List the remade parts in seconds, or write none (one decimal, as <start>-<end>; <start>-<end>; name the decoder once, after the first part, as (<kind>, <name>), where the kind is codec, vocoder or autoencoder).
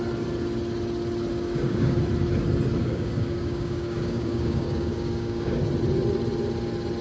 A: 1.3-2.0 (codec, DAC); 2.8-5.6